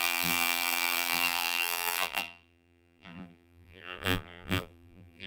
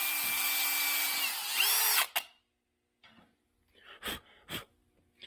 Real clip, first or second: second